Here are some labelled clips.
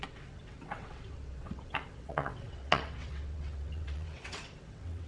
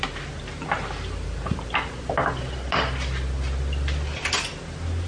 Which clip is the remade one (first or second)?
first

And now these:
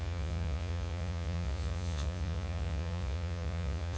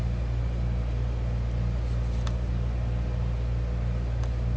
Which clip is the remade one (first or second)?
first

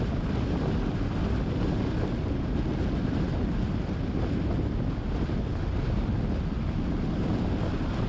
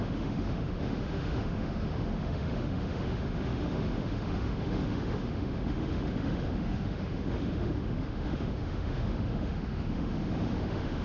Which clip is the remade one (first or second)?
second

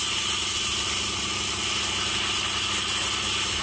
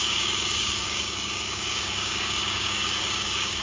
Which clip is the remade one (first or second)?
second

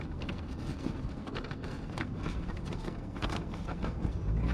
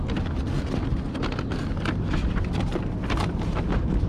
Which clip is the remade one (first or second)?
first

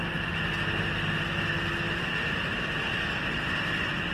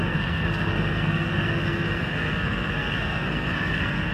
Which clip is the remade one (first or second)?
second